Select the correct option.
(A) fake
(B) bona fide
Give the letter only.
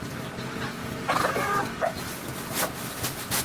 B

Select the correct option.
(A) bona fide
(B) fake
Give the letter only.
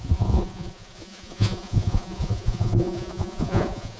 B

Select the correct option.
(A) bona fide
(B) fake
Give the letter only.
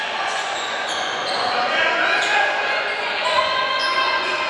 B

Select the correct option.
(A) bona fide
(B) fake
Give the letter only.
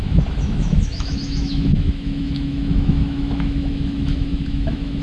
B